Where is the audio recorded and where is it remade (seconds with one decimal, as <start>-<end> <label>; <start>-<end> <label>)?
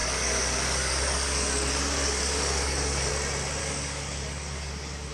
0.0-3.1 remade; 3.1-3.6 recorded; 3.6-5.1 remade